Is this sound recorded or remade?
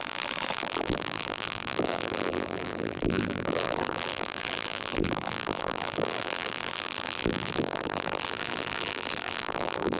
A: remade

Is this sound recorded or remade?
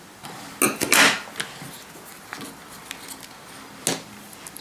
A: recorded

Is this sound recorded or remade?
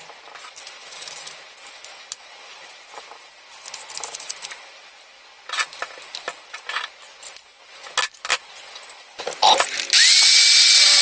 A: recorded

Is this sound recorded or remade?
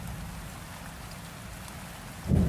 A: recorded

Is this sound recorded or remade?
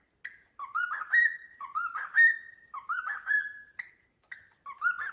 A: recorded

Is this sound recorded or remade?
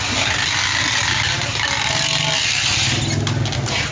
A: recorded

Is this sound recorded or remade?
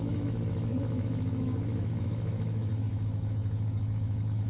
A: remade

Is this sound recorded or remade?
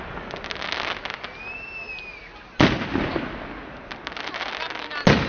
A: recorded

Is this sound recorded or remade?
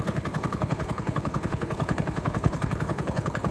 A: remade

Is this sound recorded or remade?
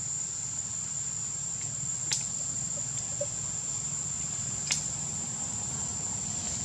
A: recorded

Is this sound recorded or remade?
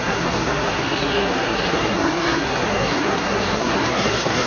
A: remade